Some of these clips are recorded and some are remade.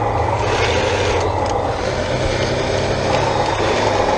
recorded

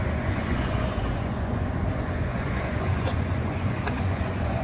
remade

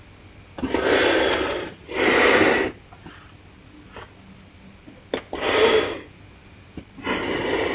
recorded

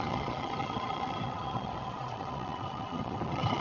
remade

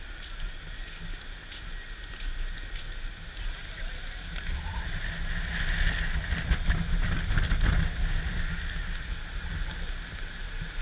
recorded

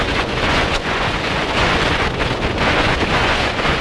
remade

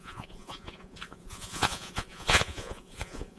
remade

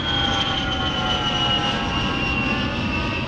recorded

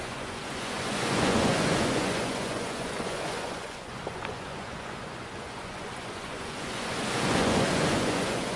remade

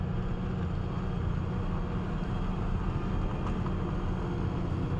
recorded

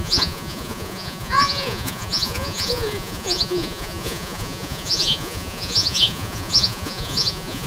remade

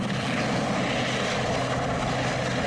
recorded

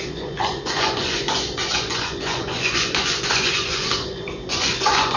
remade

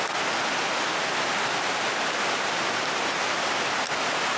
recorded